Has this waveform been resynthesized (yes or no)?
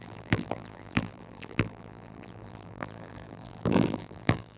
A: yes